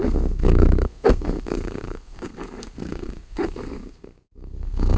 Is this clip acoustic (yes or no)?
no